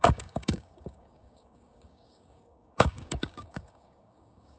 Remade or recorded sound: remade